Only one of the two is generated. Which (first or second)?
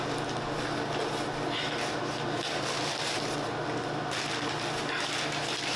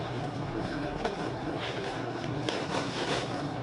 second